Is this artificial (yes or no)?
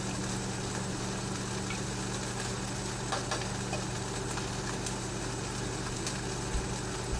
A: no